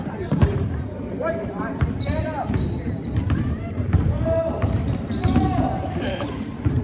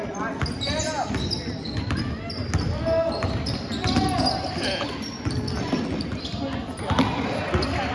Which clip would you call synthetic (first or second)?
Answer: first